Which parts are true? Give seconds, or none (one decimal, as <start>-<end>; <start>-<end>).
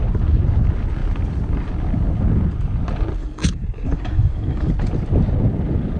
0.0-3.2; 4.7-6.0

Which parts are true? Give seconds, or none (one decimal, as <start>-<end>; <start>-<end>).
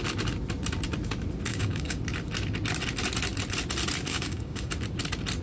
0.0-1.5; 2.0-4.1; 4.7-5.4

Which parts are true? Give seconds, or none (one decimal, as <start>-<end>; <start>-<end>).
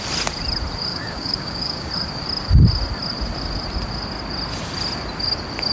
0.0-0.9; 1.9-5.7